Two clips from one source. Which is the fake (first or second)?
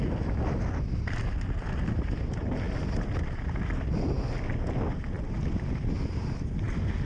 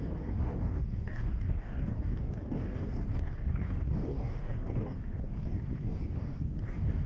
second